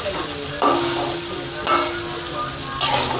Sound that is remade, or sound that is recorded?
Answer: recorded